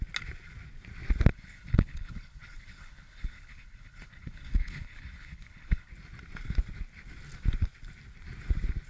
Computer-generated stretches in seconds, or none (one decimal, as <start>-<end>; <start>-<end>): 1.3-5.9